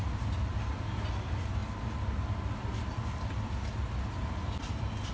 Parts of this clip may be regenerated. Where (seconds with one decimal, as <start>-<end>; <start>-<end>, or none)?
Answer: none